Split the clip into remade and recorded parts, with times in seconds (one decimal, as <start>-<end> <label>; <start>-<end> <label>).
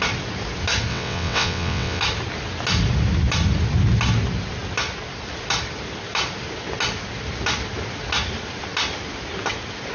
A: 0.0-0.9 recorded; 0.9-2.0 remade; 2.0-9.9 recorded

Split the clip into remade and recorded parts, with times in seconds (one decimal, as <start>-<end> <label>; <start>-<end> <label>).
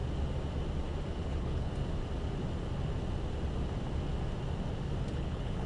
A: 0.0-1.2 recorded; 1.2-1.7 remade; 1.7-5.1 recorded; 5.1-5.7 remade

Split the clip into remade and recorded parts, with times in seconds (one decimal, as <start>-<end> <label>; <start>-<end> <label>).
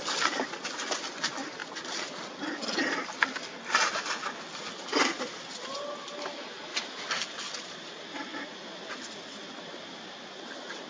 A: 0.0-10.9 recorded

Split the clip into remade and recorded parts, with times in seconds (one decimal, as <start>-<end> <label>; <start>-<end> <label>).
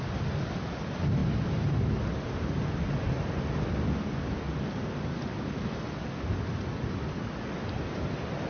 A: 0.0-8.5 recorded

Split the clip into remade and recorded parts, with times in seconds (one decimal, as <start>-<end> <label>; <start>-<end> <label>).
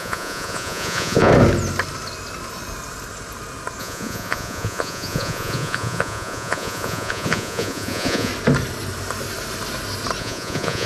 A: 0.0-1.3 remade; 1.3-3.8 recorded; 3.8-8.3 remade; 8.3-10.2 recorded; 10.2-10.9 remade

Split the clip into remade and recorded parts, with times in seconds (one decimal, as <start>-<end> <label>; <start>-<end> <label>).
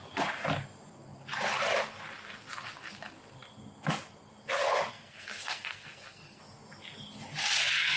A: 0.0-4.9 recorded; 4.9-6.4 remade; 6.4-7.4 recorded; 7.4-8.0 remade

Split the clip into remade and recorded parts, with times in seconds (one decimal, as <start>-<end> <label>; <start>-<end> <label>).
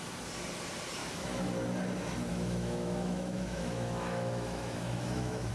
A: 0.0-1.0 recorded; 1.0-1.5 remade; 1.5-2.3 recorded; 2.3-5.5 remade